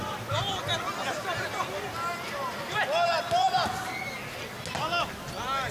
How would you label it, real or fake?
real